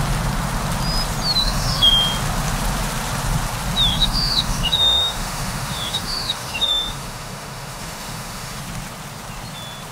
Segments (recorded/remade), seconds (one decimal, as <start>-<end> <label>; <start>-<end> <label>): 0.0-1.4 recorded; 1.4-1.9 remade; 1.9-3.9 recorded; 3.9-8.6 remade; 8.6-9.9 recorded